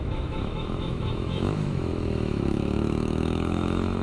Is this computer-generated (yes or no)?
yes